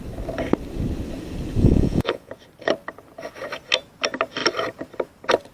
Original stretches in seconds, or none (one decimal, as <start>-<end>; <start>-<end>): 0.0-1.6; 2.3-5.5